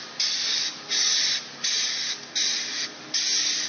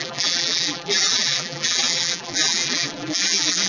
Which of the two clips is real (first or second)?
first